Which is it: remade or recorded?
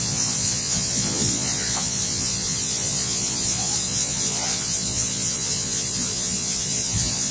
remade